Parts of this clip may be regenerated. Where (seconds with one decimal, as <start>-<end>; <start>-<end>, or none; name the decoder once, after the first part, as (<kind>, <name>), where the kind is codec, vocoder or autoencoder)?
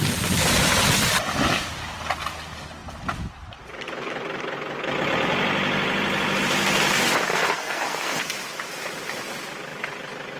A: 7.3-8.2 (codec, SNAC)